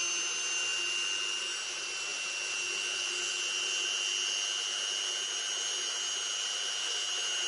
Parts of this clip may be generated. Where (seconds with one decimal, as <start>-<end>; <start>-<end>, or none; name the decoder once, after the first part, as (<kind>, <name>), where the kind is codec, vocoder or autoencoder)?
none